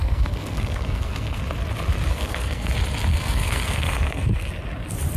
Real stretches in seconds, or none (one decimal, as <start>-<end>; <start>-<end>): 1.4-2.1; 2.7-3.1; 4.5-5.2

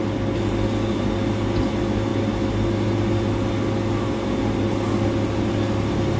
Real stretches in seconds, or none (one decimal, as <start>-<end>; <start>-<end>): 0.0-6.2

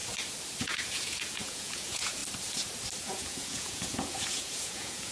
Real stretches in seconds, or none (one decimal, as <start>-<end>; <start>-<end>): 0.0-0.6; 2.2-3.0